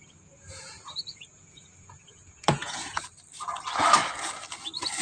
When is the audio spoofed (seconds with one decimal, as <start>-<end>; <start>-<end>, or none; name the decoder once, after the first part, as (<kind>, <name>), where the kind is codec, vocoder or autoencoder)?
0.0-3.0 (vocoder, Vocos)